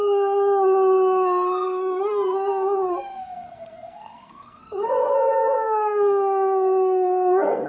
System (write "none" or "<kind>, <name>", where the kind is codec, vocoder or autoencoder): codec, SNAC